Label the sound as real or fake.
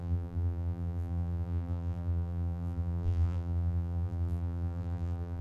fake